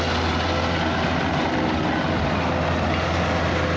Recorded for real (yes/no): yes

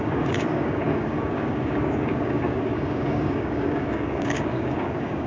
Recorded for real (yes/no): no